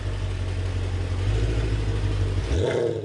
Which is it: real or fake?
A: real